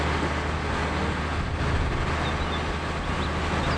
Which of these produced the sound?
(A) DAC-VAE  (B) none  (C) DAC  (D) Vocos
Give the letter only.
B